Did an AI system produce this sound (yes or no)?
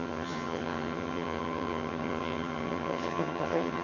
yes